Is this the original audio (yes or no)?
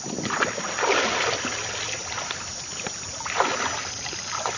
yes